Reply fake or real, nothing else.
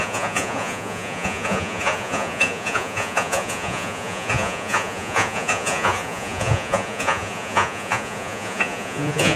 fake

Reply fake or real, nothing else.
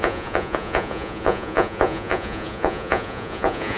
fake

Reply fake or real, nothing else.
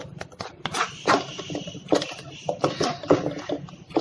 real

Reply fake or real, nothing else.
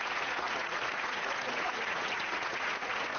fake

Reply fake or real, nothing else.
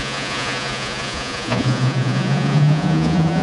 fake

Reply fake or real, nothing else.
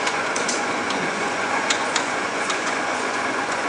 fake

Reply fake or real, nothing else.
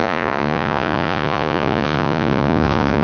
fake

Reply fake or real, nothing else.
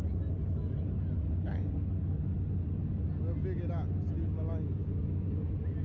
real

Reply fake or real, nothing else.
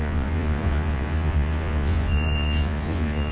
fake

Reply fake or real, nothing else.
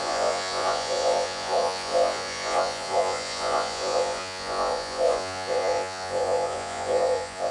fake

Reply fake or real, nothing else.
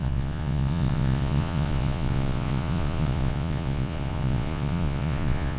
fake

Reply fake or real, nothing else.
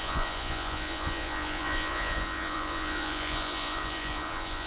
fake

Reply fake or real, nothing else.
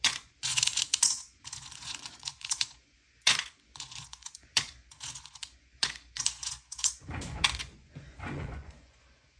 fake